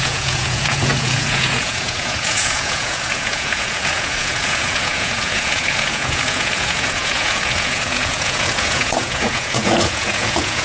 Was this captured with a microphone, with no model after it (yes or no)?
no